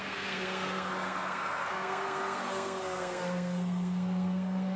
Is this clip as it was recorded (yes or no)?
no